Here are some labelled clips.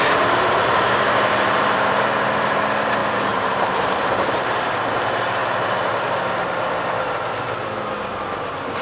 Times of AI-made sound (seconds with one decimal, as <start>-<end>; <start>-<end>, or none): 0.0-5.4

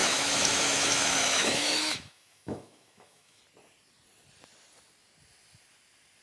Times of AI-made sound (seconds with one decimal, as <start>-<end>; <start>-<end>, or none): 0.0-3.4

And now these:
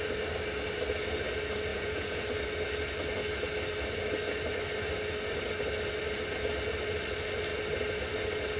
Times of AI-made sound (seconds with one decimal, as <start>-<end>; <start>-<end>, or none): 1.7-2.2

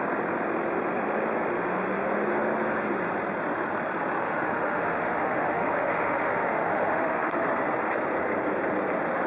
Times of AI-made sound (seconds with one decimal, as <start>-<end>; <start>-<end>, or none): 4.2-7.4

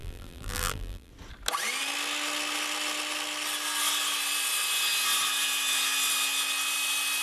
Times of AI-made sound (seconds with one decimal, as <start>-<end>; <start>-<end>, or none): 0.0-1.1

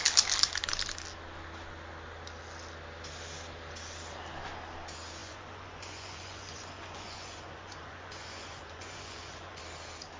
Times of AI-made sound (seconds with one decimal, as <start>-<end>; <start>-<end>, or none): 5.2-9.6